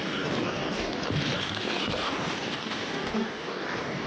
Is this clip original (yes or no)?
no